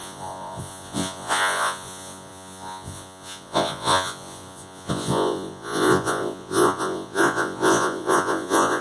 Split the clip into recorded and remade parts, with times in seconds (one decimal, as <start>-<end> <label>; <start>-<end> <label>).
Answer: 0.0-8.8 remade